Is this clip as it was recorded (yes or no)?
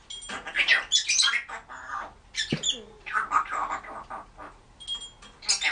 yes